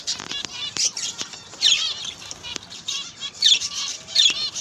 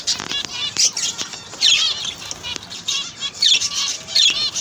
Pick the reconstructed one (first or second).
first